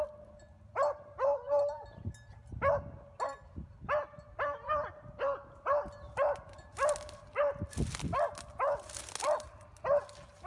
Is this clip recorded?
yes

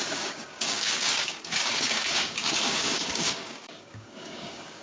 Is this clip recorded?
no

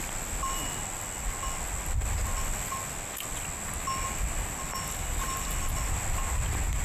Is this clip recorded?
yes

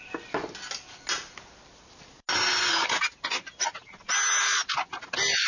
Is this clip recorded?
yes